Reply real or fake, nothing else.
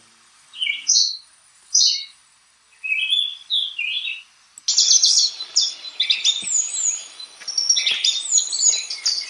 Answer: real